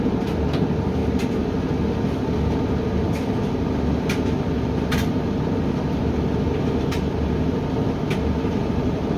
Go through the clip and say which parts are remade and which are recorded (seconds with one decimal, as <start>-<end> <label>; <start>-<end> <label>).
0.0-1.0 remade; 1.0-5.1 recorded; 5.1-9.2 remade